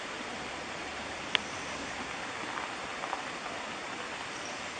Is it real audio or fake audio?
real